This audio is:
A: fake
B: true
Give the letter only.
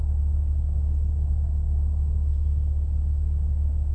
B